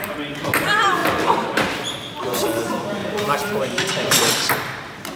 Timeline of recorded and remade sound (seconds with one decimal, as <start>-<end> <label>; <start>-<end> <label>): 0.0-3.0 recorded; 3.0-4.5 remade; 4.5-5.2 recorded